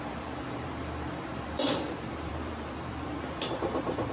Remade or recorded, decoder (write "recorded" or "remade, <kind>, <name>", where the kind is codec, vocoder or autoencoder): remade, vocoder, BigVGAN v2